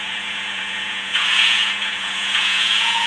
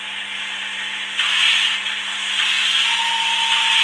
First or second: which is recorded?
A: second